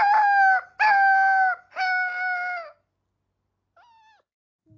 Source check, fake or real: real